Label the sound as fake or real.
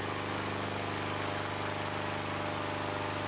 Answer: real